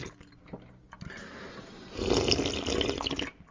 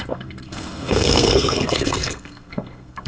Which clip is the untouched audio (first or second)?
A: first